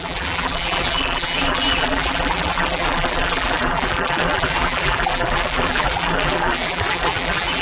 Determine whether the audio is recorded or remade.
remade